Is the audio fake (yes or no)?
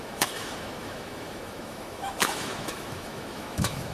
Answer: yes